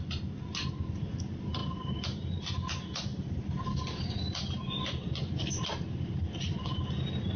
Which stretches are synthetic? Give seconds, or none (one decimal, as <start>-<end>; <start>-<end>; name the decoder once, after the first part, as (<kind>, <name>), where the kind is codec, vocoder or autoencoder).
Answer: 1.6-2.3 (vocoder, BigVGAN v2)